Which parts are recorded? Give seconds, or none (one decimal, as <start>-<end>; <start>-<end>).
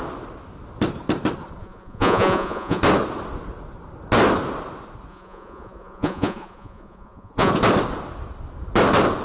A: 0.0-1.6; 2.8-5.1; 7.5-9.2